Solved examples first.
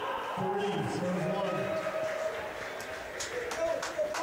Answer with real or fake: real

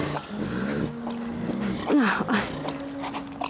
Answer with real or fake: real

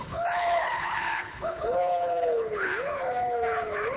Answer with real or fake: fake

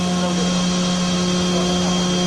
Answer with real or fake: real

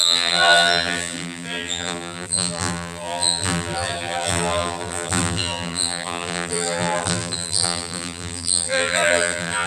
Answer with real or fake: fake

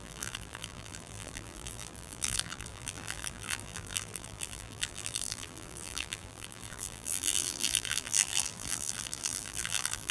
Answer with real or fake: fake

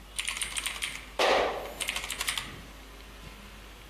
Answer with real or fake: real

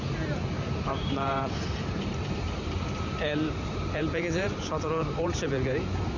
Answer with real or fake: fake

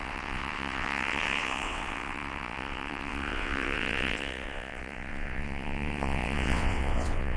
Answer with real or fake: fake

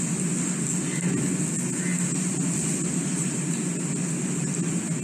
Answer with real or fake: real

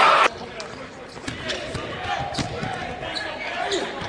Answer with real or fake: real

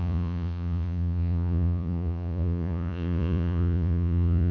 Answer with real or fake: fake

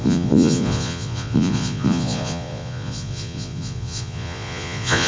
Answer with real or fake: fake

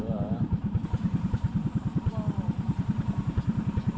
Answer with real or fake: fake